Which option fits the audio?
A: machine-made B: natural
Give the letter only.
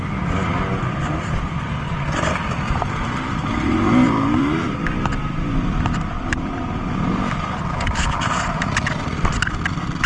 A